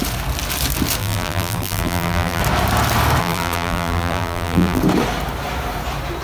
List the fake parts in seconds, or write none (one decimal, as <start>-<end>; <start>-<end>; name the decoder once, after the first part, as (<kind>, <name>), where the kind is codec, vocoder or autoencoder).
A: 1.0-2.4 (vocoder, BigVGAN v2); 3.2-4.8